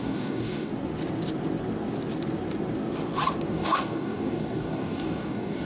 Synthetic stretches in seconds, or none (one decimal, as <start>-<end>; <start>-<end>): 0.0-0.7; 3.5-5.6